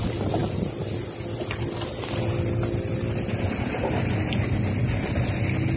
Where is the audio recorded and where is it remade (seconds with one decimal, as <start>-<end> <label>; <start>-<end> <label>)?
0.0-5.8 recorded

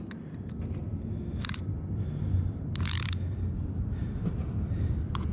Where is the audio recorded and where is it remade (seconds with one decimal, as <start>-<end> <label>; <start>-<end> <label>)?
0.0-5.3 recorded

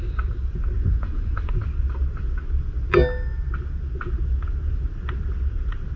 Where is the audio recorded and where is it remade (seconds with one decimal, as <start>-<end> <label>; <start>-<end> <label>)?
0.0-0.8 recorded; 0.8-1.5 remade; 1.5-6.0 recorded